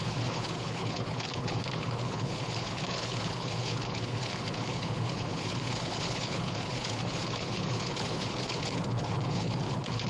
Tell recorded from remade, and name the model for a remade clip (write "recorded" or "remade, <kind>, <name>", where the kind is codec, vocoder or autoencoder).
remade, codec, HILCodec